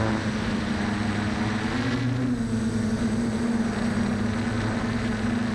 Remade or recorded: recorded